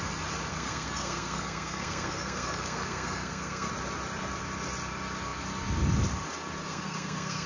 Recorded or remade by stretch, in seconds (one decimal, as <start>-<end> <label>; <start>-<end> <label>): 0.0-0.5 recorded; 0.5-3.7 remade; 3.7-6.7 recorded; 6.7-7.5 remade